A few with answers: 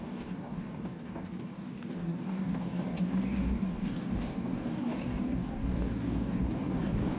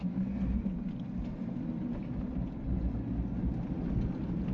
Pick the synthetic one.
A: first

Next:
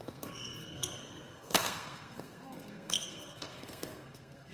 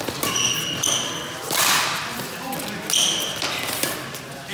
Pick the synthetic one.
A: first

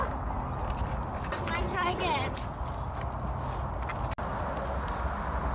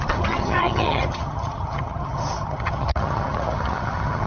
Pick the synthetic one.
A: second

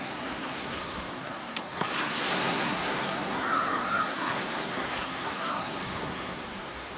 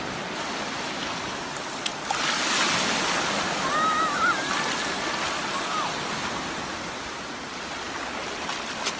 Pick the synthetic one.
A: first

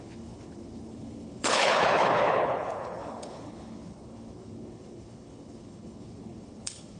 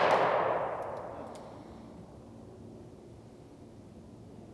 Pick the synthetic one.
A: first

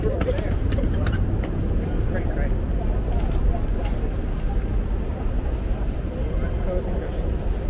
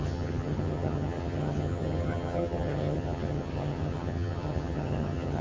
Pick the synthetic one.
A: second